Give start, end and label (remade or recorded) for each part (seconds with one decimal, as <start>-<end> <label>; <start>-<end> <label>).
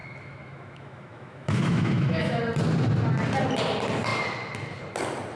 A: 0.0-2.4 remade; 2.4-5.4 recorded